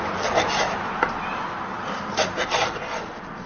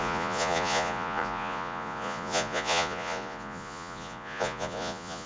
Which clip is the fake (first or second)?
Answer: second